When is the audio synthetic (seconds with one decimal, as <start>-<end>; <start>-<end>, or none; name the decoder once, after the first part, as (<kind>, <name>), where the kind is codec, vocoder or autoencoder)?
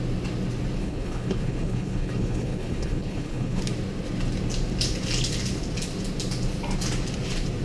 0.8-3.6 (codec, HILCodec)